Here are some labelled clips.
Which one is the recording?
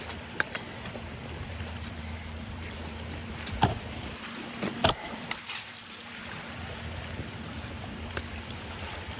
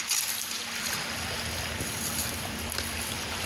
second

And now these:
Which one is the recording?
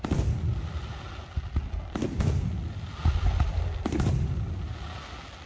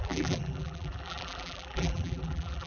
first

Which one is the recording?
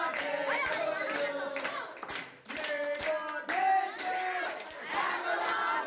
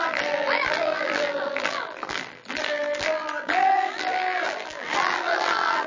first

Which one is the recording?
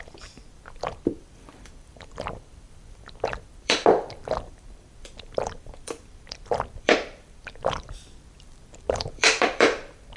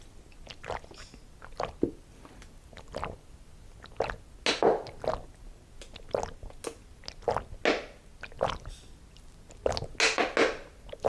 second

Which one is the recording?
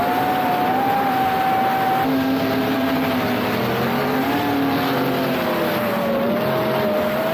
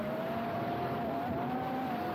first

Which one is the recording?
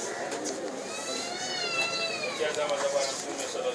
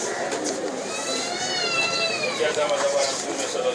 first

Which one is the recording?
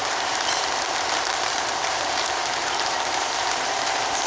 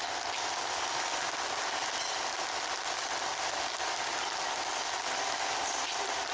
second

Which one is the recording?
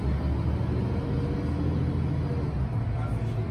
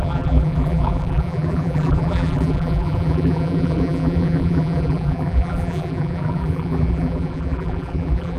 first